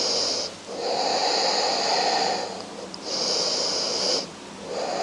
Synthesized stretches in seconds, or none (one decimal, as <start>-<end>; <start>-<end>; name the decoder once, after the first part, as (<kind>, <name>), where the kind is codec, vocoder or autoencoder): none